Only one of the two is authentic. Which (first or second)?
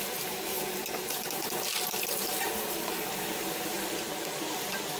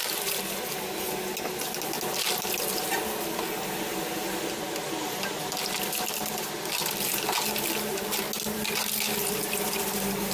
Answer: second